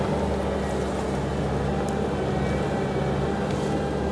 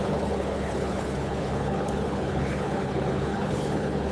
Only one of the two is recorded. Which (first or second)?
first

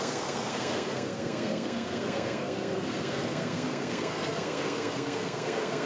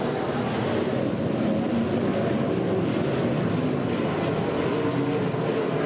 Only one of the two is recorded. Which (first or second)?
second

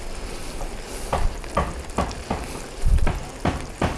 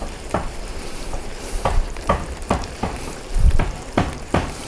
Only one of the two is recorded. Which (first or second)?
first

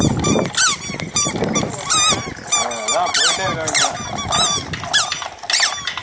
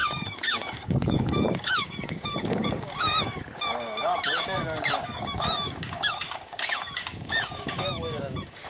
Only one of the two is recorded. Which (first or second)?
first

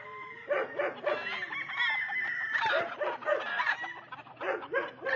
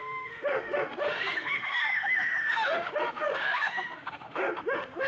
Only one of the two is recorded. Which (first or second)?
first